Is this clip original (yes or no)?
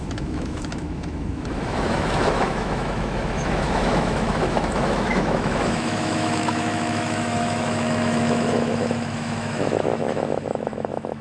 no